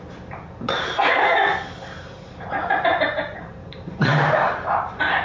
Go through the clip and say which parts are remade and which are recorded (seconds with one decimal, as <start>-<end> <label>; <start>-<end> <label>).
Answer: 0.0-1.0 remade; 1.0-2.8 recorded; 2.8-5.2 remade